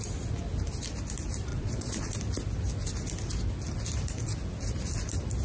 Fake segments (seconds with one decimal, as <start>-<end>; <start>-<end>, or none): 1.5-2.1